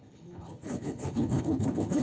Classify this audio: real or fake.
fake